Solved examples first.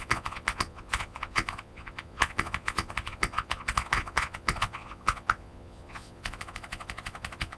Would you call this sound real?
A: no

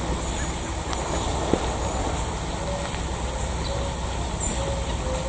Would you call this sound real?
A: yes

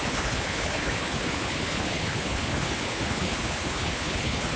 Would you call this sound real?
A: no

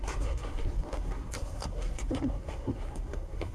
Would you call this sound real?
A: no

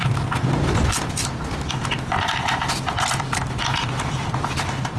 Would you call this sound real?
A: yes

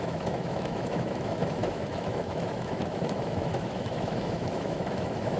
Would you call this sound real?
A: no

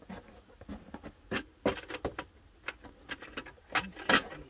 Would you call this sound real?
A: yes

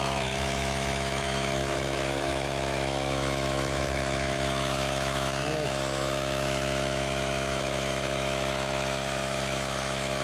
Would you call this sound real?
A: no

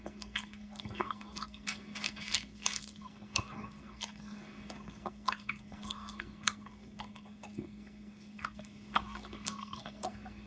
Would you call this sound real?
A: no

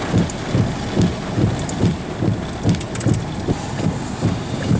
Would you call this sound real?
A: yes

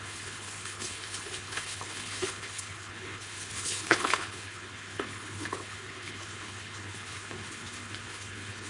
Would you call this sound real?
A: no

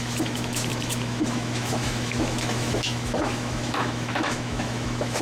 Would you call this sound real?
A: no